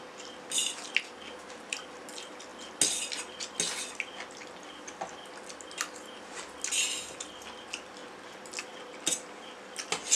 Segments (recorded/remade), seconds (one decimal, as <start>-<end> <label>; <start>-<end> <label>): 0.0-10.2 recorded